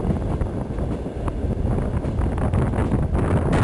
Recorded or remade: recorded